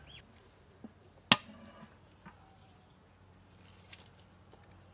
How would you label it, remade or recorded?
recorded